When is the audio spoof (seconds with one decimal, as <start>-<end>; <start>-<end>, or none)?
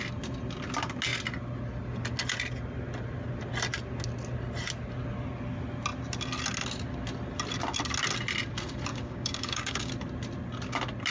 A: 8.9-9.9